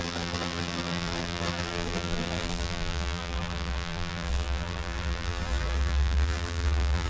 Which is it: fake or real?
fake